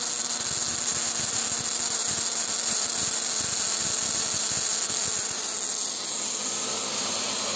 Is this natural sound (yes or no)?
yes